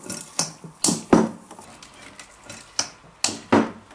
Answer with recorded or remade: recorded